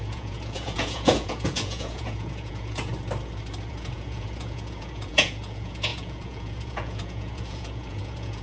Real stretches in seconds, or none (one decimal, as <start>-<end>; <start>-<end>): 2.9-3.7